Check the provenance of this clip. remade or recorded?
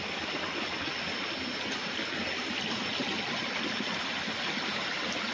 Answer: recorded